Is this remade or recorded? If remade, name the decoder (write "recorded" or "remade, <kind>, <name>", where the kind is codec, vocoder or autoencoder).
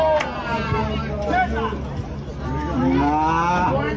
recorded